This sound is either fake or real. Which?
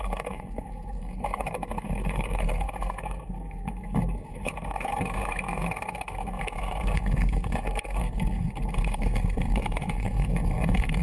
fake